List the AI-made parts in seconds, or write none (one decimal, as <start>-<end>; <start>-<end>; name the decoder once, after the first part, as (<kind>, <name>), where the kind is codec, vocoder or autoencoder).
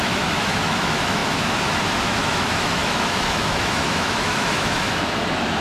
0.0-5.6 (autoencoder, DAC-VAE)